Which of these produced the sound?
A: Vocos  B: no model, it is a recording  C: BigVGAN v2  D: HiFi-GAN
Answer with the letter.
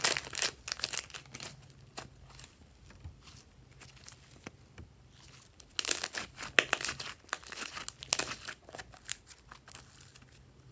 B